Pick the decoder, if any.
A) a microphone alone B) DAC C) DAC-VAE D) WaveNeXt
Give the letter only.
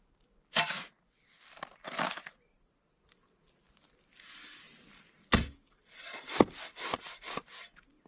A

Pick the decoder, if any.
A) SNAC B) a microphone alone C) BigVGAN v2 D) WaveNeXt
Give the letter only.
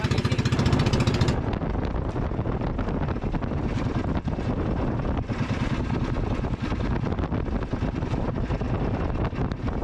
B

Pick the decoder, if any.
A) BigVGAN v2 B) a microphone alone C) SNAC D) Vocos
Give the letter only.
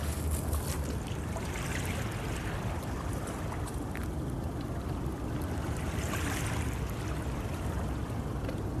B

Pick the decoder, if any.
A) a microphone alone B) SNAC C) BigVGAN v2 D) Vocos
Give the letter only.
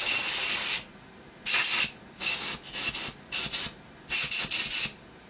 A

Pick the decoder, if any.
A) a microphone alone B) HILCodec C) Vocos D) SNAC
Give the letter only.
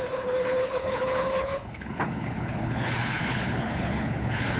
B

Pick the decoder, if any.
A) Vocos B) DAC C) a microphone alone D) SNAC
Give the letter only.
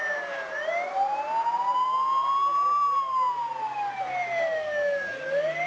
C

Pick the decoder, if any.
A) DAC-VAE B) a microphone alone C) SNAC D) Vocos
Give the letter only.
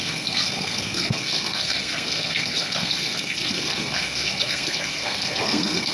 C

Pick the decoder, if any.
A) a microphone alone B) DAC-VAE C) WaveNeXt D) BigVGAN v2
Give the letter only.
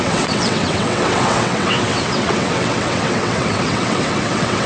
C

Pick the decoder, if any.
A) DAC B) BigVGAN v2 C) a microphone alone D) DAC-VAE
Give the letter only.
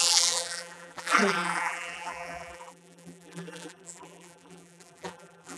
B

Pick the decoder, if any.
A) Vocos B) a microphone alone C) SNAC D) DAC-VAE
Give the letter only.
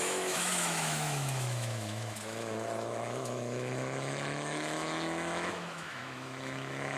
D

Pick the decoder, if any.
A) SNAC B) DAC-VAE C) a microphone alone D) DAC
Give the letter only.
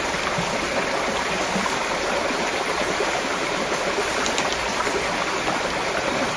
C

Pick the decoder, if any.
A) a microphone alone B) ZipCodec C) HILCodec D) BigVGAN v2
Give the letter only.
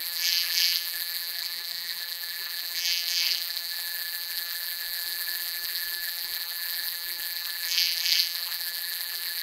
D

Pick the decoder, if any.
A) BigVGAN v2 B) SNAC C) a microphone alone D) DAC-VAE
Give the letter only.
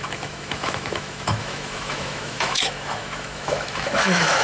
D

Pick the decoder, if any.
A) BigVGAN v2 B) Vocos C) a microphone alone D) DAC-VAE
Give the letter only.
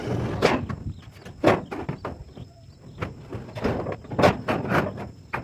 C